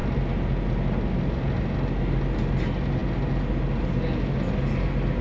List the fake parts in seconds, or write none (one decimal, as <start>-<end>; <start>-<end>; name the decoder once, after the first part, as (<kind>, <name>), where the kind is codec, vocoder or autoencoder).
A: none